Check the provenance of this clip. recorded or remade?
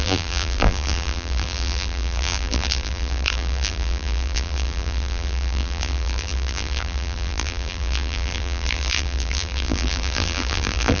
remade